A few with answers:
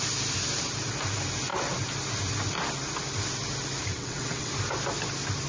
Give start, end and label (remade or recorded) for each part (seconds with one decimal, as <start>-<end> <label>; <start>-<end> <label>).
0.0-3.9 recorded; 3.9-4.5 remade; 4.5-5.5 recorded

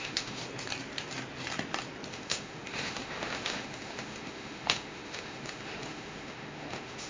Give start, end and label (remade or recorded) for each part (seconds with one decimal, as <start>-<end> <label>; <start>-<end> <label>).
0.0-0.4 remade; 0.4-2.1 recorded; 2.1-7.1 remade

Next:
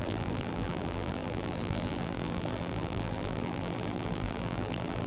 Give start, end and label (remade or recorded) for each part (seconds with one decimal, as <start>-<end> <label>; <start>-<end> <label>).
0.0-5.1 remade